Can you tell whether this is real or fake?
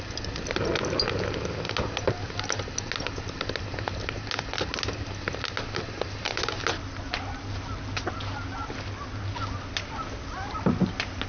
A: real